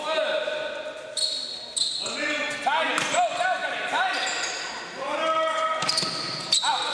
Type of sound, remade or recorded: recorded